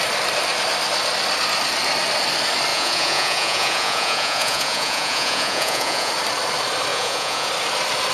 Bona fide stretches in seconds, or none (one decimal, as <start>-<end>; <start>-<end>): 0.0-2.7; 6.1-6.9; 7.5-8.1